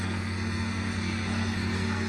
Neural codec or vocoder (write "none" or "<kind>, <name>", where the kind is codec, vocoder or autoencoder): codec, SNAC